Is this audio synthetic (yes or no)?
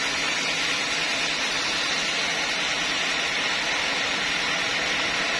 no